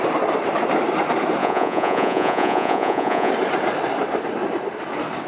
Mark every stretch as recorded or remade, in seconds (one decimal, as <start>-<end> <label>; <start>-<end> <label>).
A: 0.0-1.4 recorded; 1.4-3.3 remade; 3.3-5.3 recorded